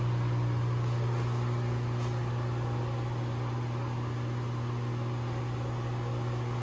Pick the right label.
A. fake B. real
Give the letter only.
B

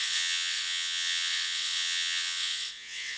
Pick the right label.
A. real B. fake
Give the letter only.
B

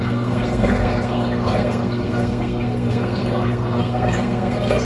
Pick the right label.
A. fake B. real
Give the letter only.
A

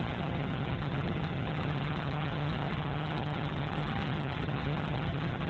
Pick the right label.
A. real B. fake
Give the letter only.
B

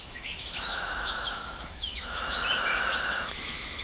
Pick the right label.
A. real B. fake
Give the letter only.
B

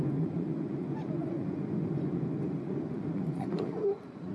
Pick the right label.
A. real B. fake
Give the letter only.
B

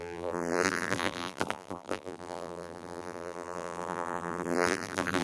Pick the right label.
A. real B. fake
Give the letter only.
B